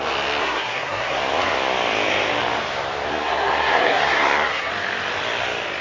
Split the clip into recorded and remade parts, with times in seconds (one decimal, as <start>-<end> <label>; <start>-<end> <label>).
0.0-0.4 recorded; 0.4-1.2 remade; 1.2-3.1 recorded; 3.1-4.7 remade; 4.7-5.8 recorded